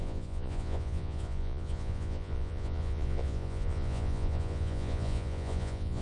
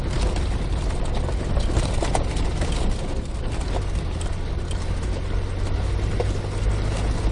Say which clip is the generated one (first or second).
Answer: first